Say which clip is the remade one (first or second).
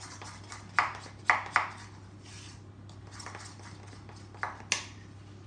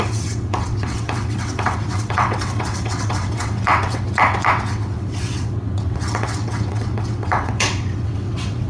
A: second